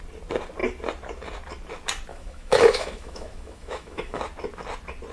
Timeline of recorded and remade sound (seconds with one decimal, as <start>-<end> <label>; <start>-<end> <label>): 0.0-2.1 recorded; 2.1-4.2 remade; 4.2-5.1 recorded